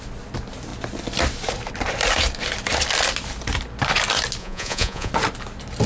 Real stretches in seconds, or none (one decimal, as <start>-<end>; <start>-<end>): 0.0-4.4; 5.1-5.9

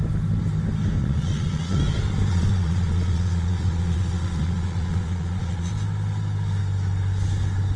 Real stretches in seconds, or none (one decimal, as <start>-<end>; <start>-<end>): 0.0-1.0; 1.8-2.3; 5.7-7.8

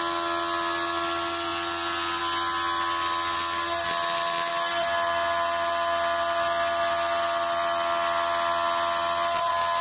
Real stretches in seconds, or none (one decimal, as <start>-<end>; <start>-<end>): 0.0-9.8

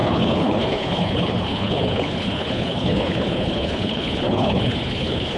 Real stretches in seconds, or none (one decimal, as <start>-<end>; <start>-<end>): none

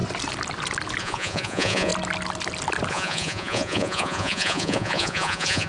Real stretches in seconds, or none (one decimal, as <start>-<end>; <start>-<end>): 0.0-1.0; 1.9-2.9